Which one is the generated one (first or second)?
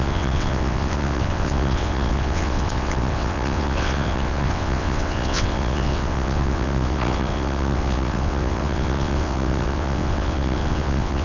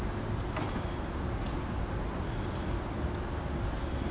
first